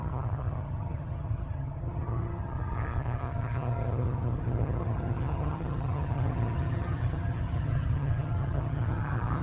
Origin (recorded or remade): remade